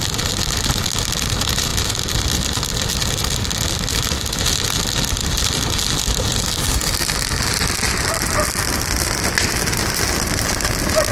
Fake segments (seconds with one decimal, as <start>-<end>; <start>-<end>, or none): none